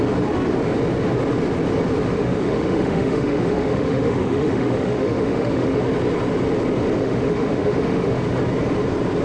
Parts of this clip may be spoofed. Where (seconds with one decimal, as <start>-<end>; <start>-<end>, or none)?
2.1-5.8; 7.0-8.4